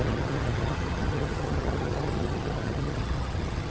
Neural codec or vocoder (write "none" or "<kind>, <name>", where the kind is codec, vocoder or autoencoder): vocoder, HiFi-GAN